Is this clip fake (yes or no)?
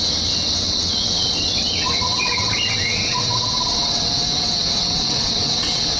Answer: yes